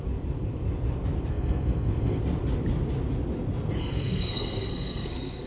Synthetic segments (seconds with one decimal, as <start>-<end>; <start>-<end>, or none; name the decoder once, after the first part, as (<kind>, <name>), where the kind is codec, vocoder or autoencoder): 1.3-2.2 (codec, SNAC); 3.8-5.5

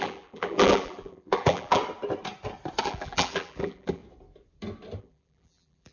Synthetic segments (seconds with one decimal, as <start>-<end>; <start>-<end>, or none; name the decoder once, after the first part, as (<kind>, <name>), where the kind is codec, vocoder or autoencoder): 0.0-1.8 (vocoder, BigVGAN v2); 2.8-4.0; 5.0-5.9

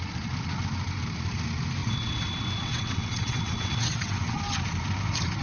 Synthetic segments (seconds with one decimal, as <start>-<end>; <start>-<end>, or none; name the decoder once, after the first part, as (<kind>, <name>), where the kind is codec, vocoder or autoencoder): 1.8-4.4 (vocoder, WaveNeXt)

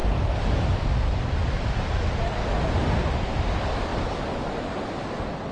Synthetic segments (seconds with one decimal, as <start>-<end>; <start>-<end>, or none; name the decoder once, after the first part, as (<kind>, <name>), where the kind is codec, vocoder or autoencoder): 0.0-3.2 (vocoder, BigVGAN v2)